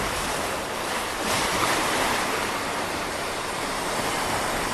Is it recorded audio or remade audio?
remade